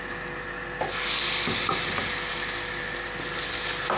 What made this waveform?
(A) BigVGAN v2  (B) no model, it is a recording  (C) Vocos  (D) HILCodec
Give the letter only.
B